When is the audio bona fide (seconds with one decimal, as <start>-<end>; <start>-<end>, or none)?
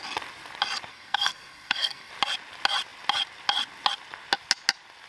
0.0-0.9; 2.1-5.1